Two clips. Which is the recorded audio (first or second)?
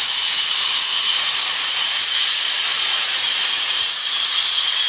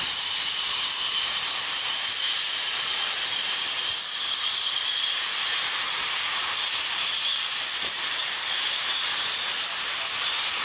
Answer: second